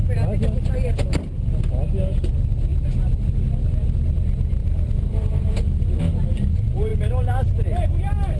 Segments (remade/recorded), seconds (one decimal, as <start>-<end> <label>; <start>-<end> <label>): 0.0-2.7 recorded; 2.7-3.4 remade; 3.4-4.6 recorded; 4.6-6.0 remade; 6.0-8.4 recorded